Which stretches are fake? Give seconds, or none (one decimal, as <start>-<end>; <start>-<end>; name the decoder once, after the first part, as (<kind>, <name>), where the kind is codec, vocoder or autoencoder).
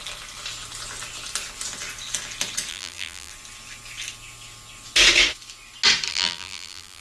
2.7-3.3 (vocoder, BigVGAN v2); 6.1-7.0